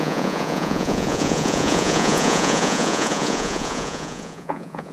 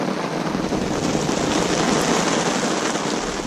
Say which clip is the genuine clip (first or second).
second